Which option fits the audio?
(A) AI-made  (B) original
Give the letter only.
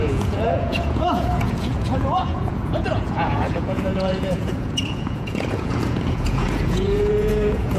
A